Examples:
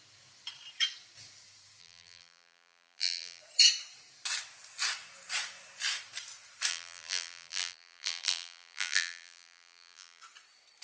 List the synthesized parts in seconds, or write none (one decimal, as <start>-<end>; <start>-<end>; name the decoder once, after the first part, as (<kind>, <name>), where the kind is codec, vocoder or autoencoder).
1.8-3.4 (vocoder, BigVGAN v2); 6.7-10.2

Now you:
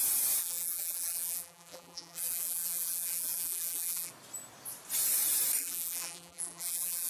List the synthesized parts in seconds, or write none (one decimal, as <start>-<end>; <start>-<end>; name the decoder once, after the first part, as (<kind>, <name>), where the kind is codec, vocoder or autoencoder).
0.4-4.1 (vocoder, BigVGAN v2); 5.6-7.1

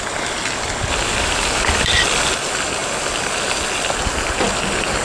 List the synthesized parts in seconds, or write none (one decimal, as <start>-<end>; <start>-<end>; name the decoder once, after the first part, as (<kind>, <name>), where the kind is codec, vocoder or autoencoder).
none